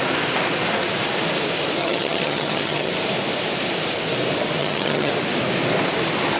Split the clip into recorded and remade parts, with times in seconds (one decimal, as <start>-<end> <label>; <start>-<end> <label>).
0.0-1.8 recorded; 1.8-2.9 remade; 2.9-4.6 recorded; 4.6-5.1 remade; 5.1-6.4 recorded